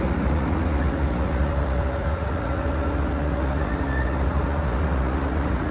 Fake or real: fake